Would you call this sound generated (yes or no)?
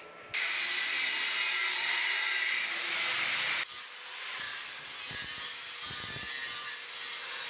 no